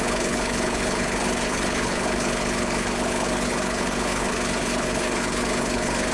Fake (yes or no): yes